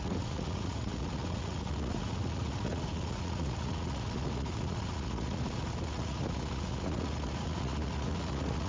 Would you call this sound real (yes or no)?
no